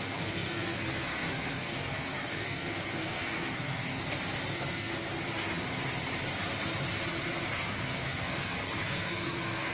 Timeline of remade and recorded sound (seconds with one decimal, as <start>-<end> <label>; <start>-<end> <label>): 0.0-3.9 remade; 3.9-4.5 recorded; 4.5-4.9 remade; 4.9-7.6 recorded; 7.6-9.7 remade